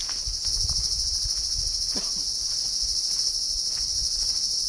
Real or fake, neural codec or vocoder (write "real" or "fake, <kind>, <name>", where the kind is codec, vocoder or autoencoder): real